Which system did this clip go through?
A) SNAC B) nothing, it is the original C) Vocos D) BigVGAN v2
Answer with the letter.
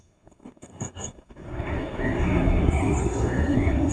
A